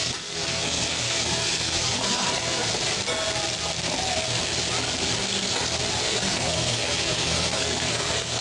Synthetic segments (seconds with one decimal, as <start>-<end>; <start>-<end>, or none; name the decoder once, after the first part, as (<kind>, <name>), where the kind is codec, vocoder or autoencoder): 0.0-2.7 (codec, SNAC); 6.0-8.4